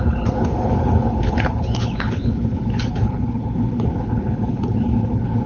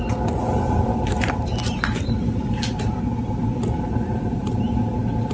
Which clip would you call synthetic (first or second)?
first